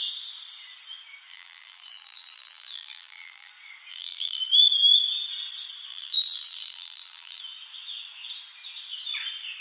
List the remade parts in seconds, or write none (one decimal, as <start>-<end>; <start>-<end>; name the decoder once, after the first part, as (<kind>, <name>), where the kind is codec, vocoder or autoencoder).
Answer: 1.3-3.5 (vocoder, BigVGAN v2); 3.9-4.4; 5.9-7.4